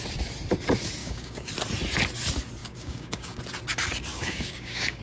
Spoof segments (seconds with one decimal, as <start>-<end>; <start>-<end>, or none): 1.0-1.5; 2.6-3.4; 4.1-5.0